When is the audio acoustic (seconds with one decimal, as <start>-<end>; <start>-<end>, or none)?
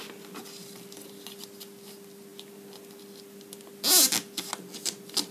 0.0-5.3